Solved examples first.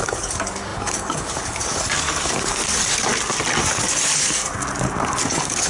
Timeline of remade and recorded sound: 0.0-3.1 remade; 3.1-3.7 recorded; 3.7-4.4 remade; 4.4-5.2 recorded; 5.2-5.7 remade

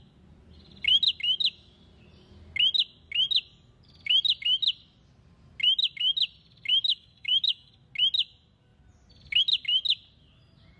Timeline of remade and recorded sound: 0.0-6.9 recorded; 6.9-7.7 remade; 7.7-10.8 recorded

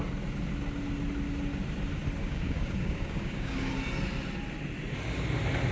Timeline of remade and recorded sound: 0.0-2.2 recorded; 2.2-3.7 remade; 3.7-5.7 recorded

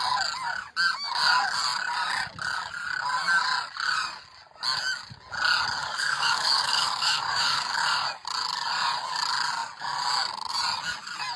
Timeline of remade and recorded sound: 0.0-5.8 recorded; 5.8-7.8 remade; 7.8-11.4 recorded

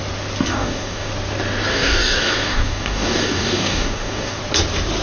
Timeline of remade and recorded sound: 0.0-0.5 recorded; 0.5-1.1 remade; 1.1-1.7 recorded; 1.7-4.4 remade; 4.4-5.0 recorded